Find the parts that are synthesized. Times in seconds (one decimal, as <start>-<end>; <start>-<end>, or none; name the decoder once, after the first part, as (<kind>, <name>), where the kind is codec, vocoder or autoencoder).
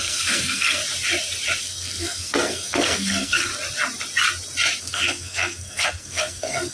0.0-0.8 (codec, SNAC); 1.6-3.5; 4.8-6.7